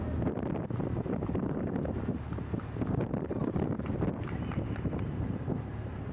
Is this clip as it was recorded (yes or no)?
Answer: yes